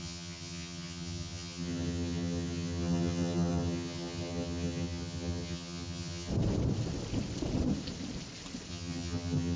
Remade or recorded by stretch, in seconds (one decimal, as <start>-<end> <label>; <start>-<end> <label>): 0.0-6.3 remade; 6.3-8.7 recorded; 8.7-9.6 remade